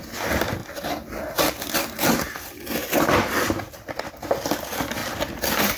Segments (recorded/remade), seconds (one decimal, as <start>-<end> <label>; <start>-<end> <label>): 0.0-5.8 recorded